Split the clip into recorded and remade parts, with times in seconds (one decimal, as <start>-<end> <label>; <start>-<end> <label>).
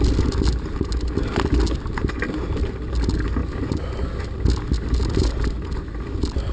0.0-6.5 recorded